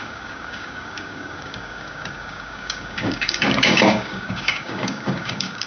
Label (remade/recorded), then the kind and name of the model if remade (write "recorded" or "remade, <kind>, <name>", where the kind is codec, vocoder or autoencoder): remade, codec, DAC